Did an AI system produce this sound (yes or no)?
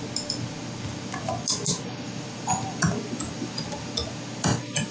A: no